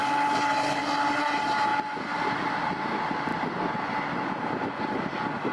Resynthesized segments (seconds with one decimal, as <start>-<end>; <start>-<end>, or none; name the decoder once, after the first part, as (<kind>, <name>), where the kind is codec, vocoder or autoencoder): 0.0-0.8 (vocoder, BigVGAN v2)